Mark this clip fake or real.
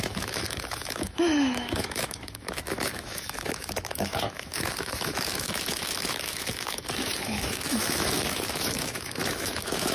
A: fake